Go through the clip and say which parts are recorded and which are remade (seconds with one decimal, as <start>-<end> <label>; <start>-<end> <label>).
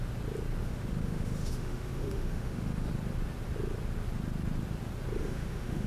0.0-0.6 recorded; 0.6-2.9 remade; 2.9-5.2 recorded; 5.2-5.9 remade